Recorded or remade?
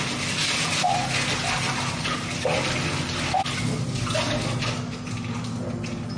recorded